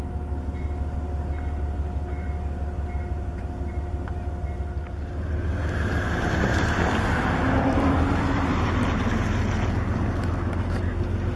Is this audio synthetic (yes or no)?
no